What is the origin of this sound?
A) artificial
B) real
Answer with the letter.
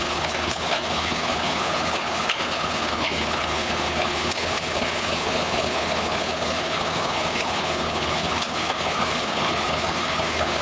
A